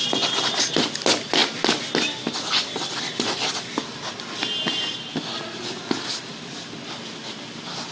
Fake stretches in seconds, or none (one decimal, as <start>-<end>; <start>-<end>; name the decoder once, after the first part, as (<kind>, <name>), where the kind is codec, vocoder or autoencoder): none